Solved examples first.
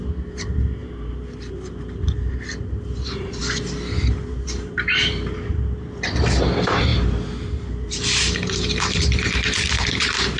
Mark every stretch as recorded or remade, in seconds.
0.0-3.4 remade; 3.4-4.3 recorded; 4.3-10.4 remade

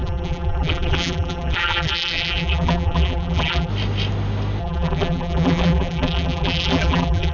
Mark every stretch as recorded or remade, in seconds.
0.0-3.7 remade; 3.7-4.6 recorded; 4.6-7.3 remade

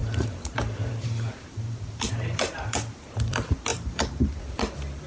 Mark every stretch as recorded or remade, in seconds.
0.0-3.1 remade; 3.1-3.7 recorded; 3.7-4.5 remade; 4.5-5.1 recorded

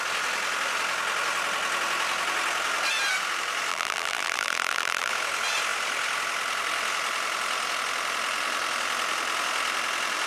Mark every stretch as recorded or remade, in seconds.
0.0-3.7 recorded; 3.7-5.1 remade; 5.1-10.3 recorded

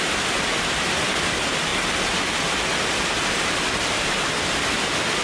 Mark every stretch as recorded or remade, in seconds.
0.0-1.7 remade; 1.7-4.1 recorded; 4.1-5.2 remade